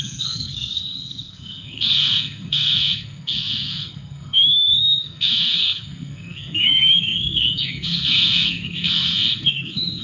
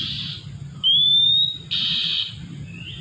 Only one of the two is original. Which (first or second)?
second